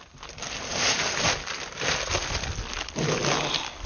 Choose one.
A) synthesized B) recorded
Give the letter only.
B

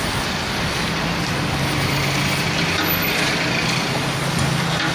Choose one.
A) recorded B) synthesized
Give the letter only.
A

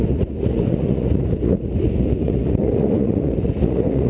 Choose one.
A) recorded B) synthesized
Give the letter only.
B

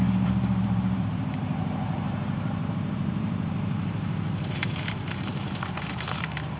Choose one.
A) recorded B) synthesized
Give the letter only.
B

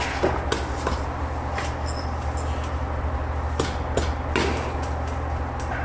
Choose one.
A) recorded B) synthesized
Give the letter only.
A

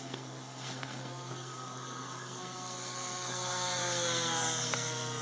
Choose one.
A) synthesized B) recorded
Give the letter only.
A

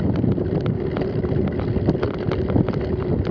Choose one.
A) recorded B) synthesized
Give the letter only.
A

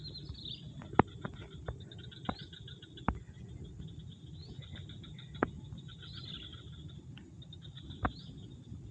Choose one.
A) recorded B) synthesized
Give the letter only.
A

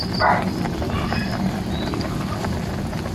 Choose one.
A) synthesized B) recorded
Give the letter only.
A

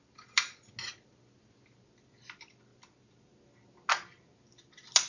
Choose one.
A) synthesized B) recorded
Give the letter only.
B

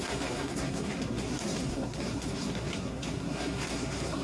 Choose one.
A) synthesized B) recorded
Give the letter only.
A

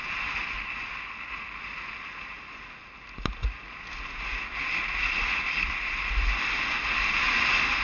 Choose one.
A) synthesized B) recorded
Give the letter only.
B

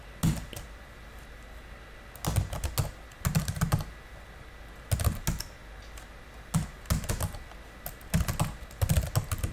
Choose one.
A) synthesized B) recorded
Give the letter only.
B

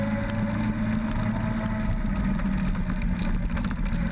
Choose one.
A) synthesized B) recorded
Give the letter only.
B